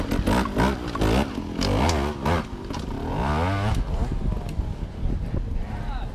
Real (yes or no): yes